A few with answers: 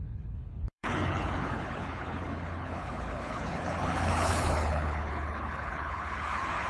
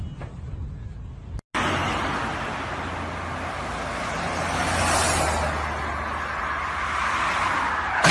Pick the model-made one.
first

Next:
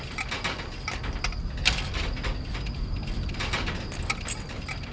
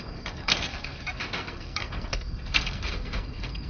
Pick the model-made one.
second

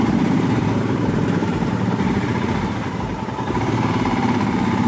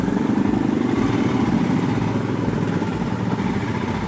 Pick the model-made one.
first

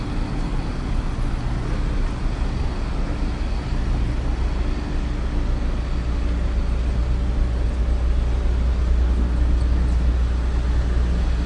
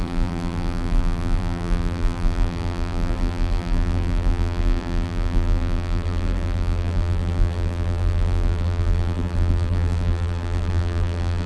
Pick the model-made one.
second